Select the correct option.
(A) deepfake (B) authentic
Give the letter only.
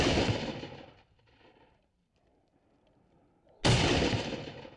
B